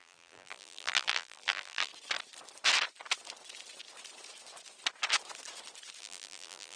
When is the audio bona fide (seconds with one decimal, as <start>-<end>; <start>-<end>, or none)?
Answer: 1.9-6.0